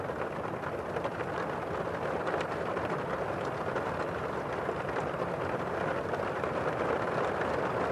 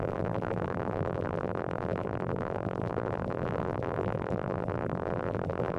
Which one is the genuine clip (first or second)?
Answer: first